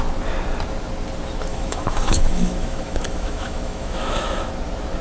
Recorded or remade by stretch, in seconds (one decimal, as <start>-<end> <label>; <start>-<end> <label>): 0.0-1.5 recorded; 1.5-4.5 remade; 4.5-5.0 recorded